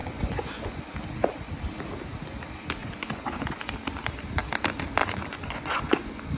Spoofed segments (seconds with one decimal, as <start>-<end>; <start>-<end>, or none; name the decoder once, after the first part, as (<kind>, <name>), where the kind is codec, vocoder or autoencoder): 0.0-0.8 (vocoder, Vocos); 2.8-3.7; 5.0-6.4